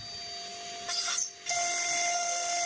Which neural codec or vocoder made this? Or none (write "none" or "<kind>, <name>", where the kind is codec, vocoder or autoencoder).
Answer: none